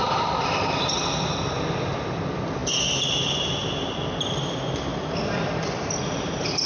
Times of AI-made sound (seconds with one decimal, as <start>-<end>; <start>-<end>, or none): none